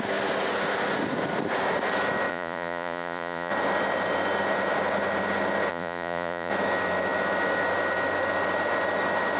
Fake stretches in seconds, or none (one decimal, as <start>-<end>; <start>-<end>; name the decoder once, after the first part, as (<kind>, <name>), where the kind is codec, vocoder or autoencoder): 2.3-3.5 (vocoder, Vocos); 5.7-6.5